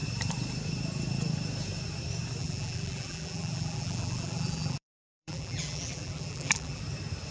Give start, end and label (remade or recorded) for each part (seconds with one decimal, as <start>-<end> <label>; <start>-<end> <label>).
0.0-2.4 recorded; 2.4-6.8 remade; 6.8-7.3 recorded

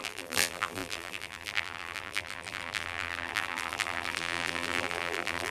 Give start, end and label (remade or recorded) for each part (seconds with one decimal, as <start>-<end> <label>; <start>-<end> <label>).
0.0-5.5 remade

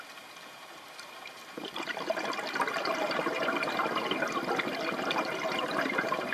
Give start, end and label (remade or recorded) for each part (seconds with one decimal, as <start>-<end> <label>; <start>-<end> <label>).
0.0-1.9 remade; 1.9-5.7 recorded; 5.7-6.3 remade

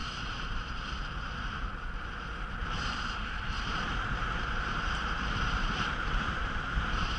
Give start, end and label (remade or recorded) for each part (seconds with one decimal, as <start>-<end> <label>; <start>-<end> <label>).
0.0-7.2 remade

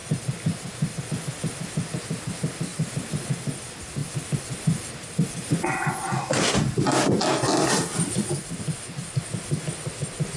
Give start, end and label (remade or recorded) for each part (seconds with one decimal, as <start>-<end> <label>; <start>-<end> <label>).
0.0-1.0 remade; 1.0-2.7 recorded; 2.7-3.5 remade; 3.5-4.0 recorded; 4.0-8.3 remade; 8.3-10.4 recorded

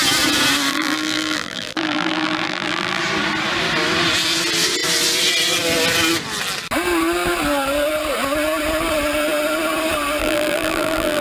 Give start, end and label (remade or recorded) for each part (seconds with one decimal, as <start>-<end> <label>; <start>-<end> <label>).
0.0-0.7 recorded; 0.7-3.0 remade; 3.0-10.2 recorded; 10.2-11.2 remade